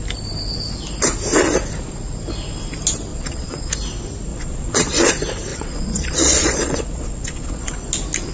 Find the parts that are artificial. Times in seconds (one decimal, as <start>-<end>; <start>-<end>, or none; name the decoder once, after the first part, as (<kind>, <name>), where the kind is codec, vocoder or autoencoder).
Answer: 3.1-3.7 (vocoder, Vocos); 4.3-5.1; 5.5-7.9